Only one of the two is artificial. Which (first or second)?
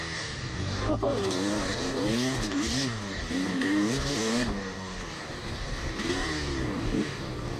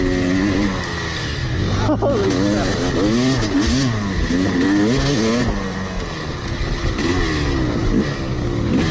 first